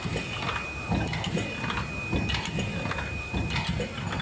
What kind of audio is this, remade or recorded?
recorded